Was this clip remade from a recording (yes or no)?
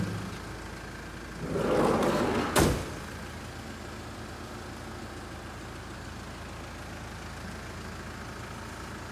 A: no